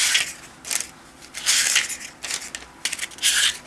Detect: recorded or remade recorded